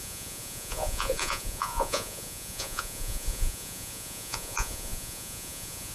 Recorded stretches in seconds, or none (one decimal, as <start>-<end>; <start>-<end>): none